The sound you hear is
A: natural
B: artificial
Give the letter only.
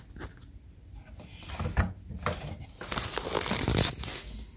A